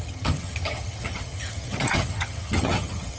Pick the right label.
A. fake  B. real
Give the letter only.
A